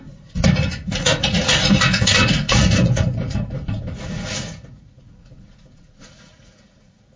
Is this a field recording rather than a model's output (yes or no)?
no